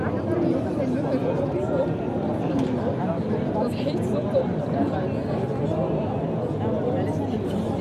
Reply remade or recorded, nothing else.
recorded